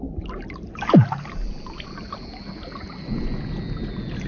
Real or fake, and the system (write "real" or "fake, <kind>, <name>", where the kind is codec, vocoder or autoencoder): real